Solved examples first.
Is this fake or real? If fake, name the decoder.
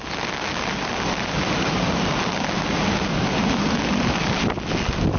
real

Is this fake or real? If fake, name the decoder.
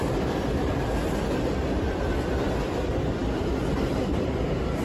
real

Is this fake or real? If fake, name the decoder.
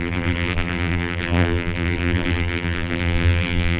fake, vocoder, BigVGAN v2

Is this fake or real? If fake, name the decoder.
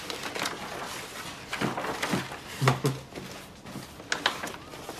real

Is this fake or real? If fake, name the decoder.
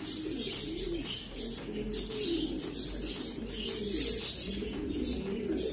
real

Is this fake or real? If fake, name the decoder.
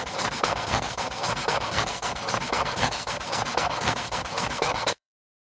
fake, codec, SNAC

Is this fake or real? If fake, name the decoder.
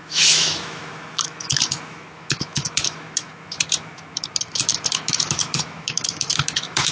fake, autoencoder, DAC-VAE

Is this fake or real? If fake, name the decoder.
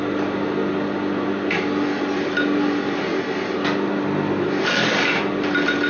real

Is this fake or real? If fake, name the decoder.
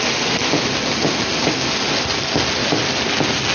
real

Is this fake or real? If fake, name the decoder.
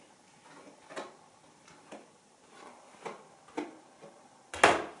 real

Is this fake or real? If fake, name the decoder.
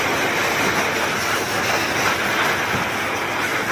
real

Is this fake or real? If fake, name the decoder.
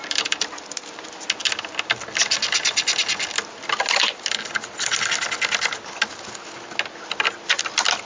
real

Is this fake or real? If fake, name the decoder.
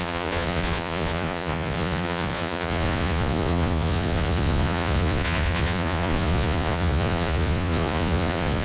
fake, vocoder, Vocos